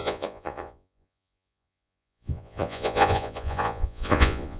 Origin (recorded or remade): remade